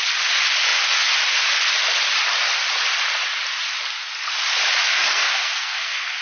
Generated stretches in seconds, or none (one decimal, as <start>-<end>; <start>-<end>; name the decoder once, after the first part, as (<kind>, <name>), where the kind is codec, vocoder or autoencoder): 4.9-6.2 (codec, SNAC)